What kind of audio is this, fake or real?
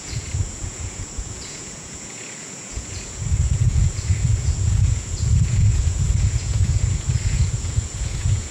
fake